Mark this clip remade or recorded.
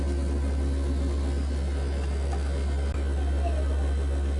recorded